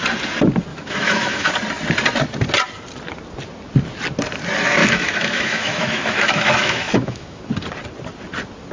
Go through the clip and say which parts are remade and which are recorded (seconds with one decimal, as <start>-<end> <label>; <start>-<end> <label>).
0.0-0.7 recorded; 0.7-1.5 remade; 1.5-4.8 recorded; 4.8-7.4 remade; 7.4-8.7 recorded